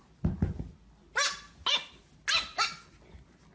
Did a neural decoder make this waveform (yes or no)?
no